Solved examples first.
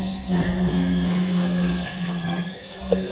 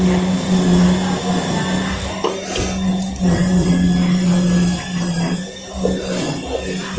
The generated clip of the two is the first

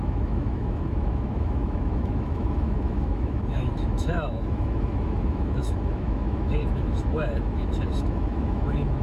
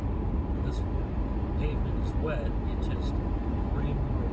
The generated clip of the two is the first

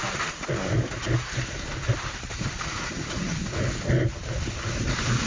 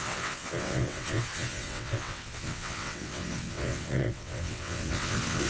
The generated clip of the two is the second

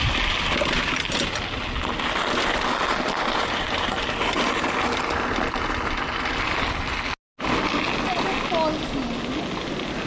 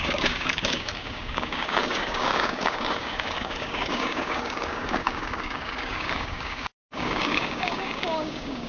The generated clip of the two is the second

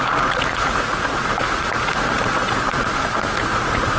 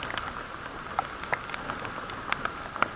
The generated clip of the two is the first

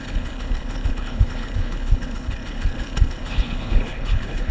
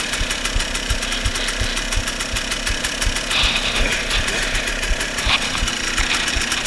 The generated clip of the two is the first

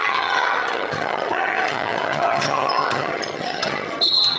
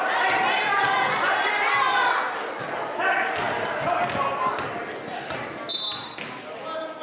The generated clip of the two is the first